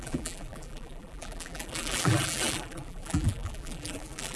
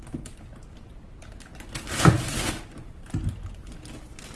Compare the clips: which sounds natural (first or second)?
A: second